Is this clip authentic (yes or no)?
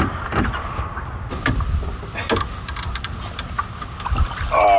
yes